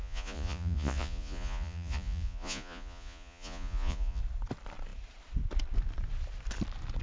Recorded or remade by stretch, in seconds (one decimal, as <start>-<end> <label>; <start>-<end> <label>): 0.0-4.2 remade; 4.2-7.0 recorded